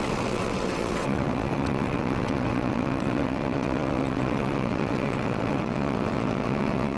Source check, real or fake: fake